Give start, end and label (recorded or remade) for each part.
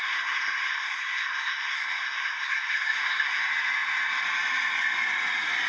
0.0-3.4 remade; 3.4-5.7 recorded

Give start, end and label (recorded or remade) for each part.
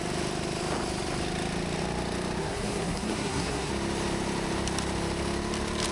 0.0-2.4 recorded; 2.4-3.7 remade; 3.7-5.9 recorded